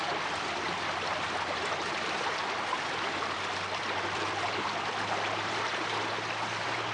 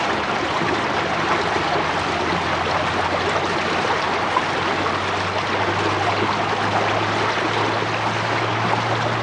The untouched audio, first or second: second